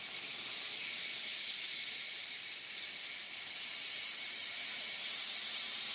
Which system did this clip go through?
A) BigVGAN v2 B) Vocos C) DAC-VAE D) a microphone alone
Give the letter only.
A